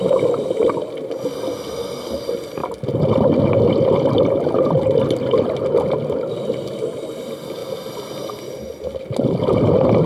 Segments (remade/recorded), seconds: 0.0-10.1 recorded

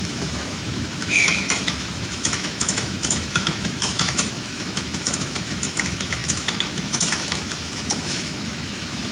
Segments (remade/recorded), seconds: 0.0-9.1 remade

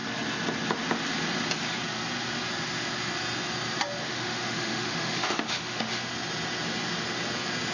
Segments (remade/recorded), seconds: 0.0-4.0 recorded; 4.0-6.1 remade; 6.1-7.7 recorded

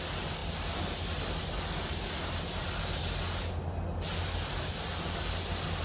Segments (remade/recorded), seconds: 0.0-5.8 recorded

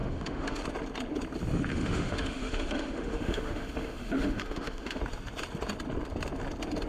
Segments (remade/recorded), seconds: 0.0-0.6 remade; 0.6-1.7 recorded; 1.7-5.0 remade; 5.0-6.9 recorded